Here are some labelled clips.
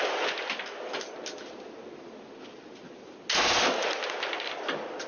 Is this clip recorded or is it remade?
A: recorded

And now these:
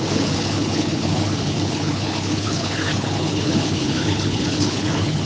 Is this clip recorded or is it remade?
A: remade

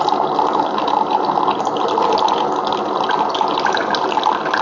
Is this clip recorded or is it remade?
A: recorded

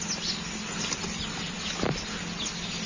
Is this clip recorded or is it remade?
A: recorded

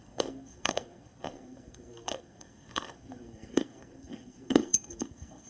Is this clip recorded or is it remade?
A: remade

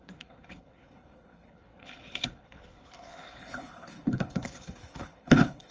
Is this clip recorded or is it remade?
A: remade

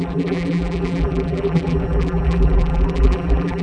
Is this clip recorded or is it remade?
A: remade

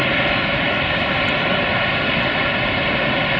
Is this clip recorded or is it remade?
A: recorded